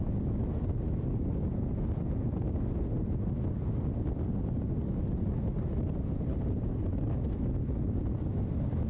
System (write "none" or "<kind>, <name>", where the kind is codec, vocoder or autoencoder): none